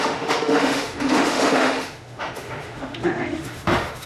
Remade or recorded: remade